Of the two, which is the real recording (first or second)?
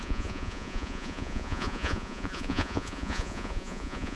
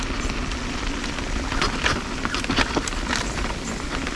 second